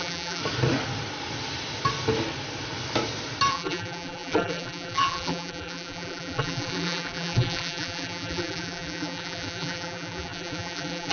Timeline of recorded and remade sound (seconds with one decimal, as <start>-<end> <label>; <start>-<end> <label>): 0.0-0.4 remade; 0.4-3.5 recorded; 3.5-11.1 remade